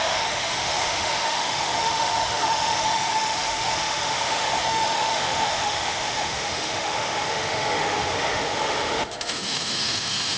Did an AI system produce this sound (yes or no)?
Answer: yes